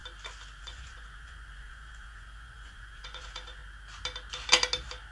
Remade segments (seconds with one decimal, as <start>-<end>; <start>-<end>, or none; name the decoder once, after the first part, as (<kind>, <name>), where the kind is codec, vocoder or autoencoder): 0.6-3.6 (vocoder, Vocos)